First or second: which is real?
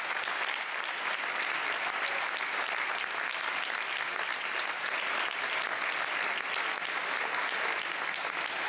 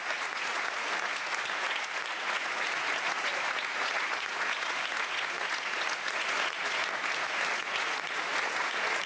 first